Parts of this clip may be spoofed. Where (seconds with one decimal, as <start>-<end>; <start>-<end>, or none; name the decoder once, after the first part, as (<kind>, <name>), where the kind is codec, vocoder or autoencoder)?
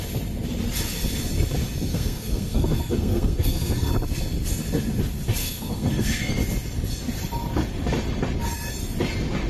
1.9-3.9 (codec, SNAC); 5.4-6.3